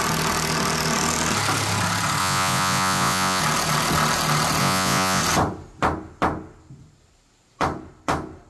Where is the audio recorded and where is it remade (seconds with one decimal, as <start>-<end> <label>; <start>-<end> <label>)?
0.0-2.2 recorded; 2.2-3.4 remade; 3.4-4.6 recorded; 4.6-5.2 remade; 5.2-8.5 recorded